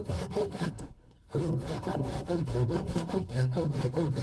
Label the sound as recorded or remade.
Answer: remade